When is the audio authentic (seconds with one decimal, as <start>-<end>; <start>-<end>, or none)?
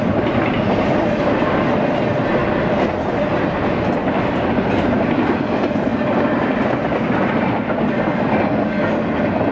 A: 0.0-5.9; 8.4-9.5